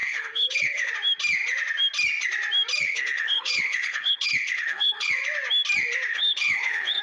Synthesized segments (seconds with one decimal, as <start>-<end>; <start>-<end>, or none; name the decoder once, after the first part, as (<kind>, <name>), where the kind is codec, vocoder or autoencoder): 0.0-0.9 (codec, HILCodec); 2.8-5.2; 6.1-7.0